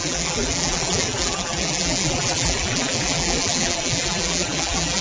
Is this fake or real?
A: fake